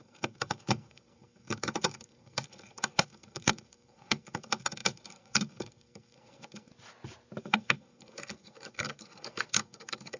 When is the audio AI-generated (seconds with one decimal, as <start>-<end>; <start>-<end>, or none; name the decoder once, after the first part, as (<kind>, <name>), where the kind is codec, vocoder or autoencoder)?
0.0-6.7 (codec, SNAC); 7.4-10.2